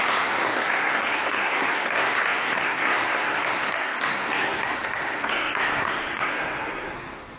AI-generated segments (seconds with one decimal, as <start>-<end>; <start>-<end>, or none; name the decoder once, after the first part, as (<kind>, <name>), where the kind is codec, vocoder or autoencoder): 0.0-7.4 (codec, SNAC)